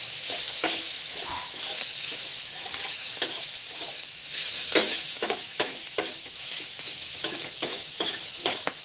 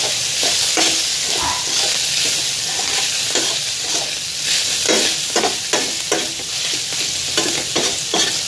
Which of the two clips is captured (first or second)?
second